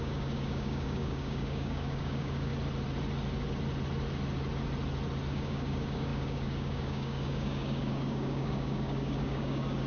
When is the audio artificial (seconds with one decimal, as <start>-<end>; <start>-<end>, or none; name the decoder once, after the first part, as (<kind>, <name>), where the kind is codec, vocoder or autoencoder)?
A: 0.0-2.5 (codec, DAC); 5.3-9.9